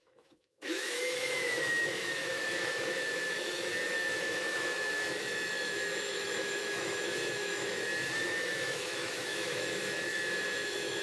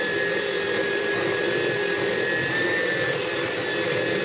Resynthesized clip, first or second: first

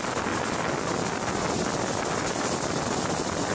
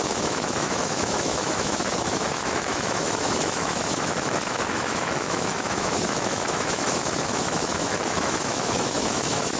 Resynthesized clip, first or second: second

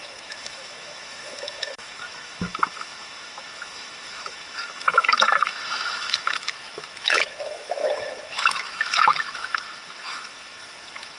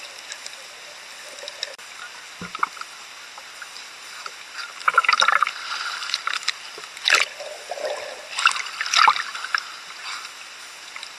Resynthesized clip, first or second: first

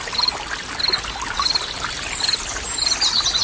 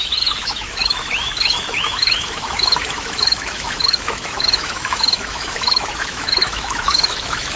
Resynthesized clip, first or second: second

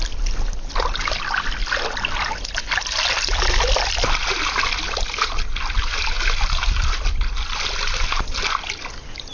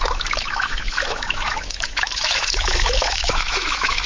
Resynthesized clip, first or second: second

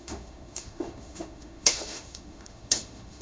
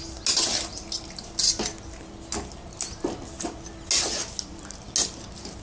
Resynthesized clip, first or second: first